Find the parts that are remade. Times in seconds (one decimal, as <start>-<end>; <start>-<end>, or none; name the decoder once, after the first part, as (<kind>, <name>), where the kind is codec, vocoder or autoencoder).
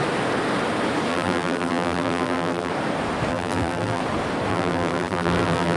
1.1-2.7 (vocoder, BigVGAN v2); 3.3-4.0; 4.5-5.8